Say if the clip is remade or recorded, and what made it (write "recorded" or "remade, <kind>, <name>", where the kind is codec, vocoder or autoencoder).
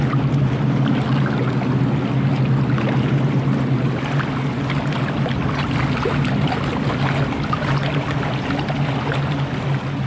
recorded